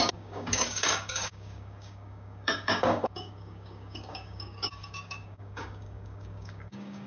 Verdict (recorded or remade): remade